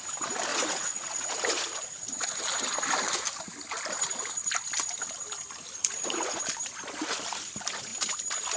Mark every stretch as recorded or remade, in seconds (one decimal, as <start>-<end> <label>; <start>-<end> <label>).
0.0-0.5 recorded; 0.5-2.4 remade; 2.4-5.8 recorded; 5.8-6.4 remade; 6.4-8.6 recorded